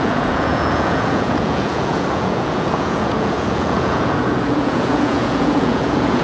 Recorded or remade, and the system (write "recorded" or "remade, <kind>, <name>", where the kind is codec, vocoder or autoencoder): remade, vocoder, Vocos